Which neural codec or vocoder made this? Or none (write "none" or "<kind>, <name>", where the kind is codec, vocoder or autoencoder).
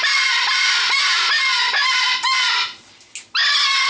none